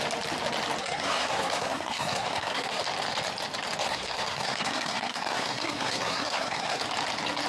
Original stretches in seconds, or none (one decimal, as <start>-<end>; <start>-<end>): 0.0-0.8; 2.8-3.8; 6.8-7.5